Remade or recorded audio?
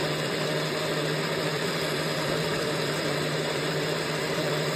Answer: remade